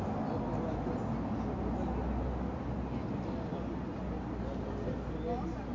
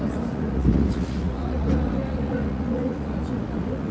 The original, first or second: first